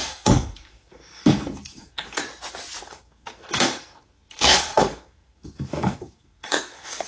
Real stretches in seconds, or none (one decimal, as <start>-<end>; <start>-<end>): 2.2-2.8